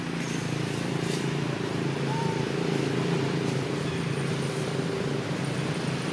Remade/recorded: remade